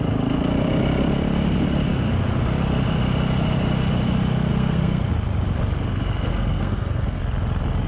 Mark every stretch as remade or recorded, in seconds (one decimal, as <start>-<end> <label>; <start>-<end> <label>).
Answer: 0.0-4.5 recorded; 4.5-5.1 remade; 5.1-6.3 recorded; 6.3-7.2 remade; 7.2-7.9 recorded